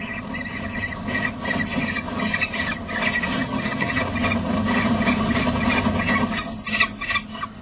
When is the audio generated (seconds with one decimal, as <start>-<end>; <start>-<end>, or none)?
3.3-4.0